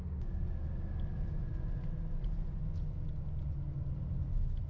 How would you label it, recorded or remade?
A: recorded